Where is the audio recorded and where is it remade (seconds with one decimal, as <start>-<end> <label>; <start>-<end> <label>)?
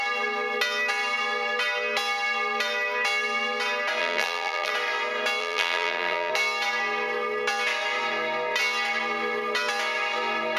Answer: 0.0-4.0 recorded; 4.0-4.7 remade; 4.7-5.4 recorded; 5.4-6.3 remade; 6.3-10.6 recorded